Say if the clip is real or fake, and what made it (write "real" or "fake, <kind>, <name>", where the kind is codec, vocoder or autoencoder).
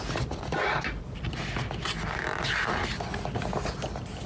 real